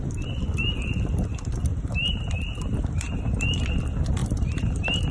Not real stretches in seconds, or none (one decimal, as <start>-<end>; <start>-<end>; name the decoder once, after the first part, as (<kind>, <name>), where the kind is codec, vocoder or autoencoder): 1.7-3.7 (vocoder, BigVGAN v2); 4.2-5.1